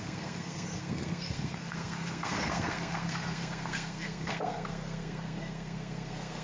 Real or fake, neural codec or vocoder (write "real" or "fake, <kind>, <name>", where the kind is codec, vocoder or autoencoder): fake, codec, SNAC